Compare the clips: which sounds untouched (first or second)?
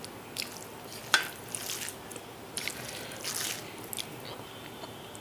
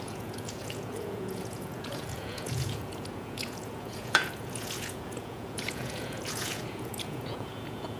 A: first